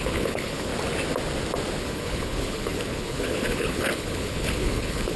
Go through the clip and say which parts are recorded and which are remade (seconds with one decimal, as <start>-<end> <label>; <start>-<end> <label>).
0.0-0.7 remade; 0.7-1.8 recorded; 1.8-5.2 remade